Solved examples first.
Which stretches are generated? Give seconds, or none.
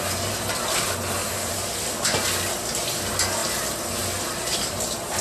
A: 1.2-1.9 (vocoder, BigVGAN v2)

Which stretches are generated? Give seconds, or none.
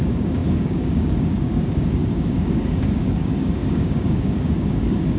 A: 0.0-5.2 (codec, DAC)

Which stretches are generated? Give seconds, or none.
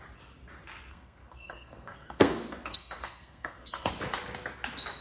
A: 0.9-3.9 (codec, SNAC)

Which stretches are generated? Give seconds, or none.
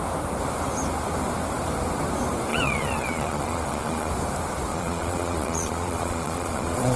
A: 2.5-4.1 (vocoder, Vocos); 4.7-7.0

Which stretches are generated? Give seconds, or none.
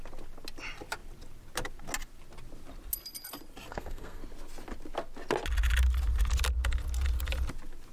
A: 3.7-4.2 (codec, SNAC)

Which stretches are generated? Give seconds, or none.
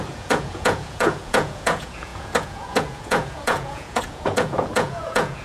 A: 0.0-5.4 (vocoder, Vocos)